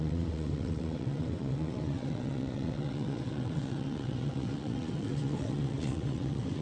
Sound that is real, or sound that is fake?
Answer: fake